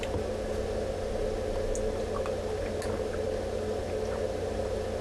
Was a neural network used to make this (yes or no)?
no